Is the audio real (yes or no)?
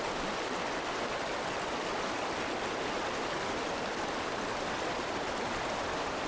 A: yes